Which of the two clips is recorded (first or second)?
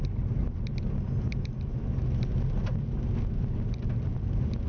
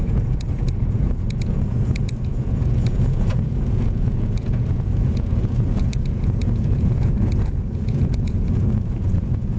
first